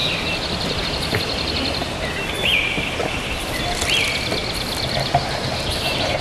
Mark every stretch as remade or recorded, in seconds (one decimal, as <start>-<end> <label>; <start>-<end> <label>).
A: 0.0-4.4 remade; 4.4-6.2 recorded